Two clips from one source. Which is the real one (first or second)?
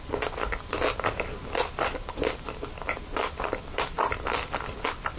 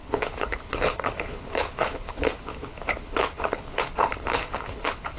first